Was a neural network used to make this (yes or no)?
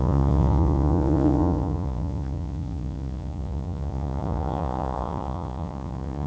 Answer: yes